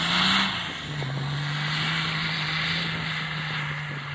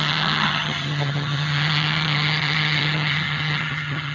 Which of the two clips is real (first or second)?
first